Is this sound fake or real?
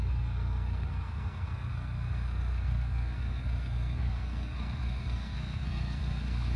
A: fake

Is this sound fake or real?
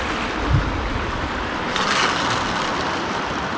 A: real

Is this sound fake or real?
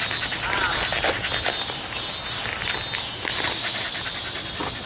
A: real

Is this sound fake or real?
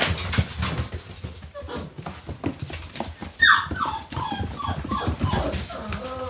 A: real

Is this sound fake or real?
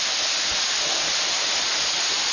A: real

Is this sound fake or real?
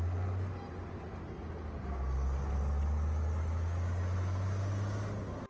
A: real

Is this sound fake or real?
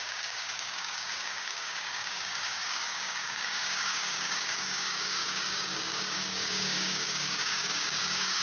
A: fake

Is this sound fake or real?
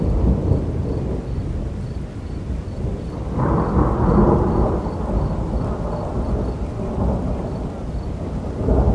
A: real